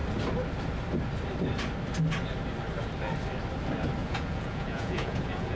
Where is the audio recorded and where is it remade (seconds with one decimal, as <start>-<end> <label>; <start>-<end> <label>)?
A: 0.0-4.0 recorded; 4.0-5.6 remade